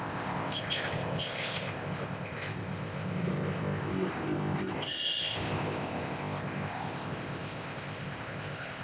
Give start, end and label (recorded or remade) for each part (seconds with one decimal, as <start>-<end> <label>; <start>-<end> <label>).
0.0-8.8 remade